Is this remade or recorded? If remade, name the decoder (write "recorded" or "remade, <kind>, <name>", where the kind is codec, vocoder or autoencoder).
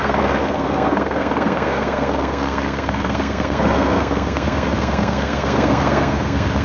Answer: remade, codec, SNAC